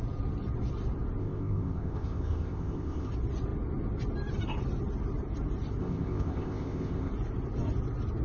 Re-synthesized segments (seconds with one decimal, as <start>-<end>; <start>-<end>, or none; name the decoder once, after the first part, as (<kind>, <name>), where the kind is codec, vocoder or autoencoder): 1.2-3.1 (codec, ZipCodec); 5.8-7.1